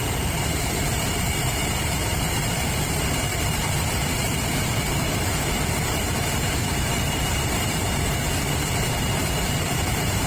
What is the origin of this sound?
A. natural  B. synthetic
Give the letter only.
B